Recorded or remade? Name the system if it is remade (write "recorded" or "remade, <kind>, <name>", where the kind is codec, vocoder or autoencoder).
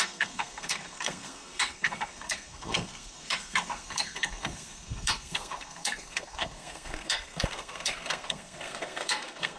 remade, codec, SNAC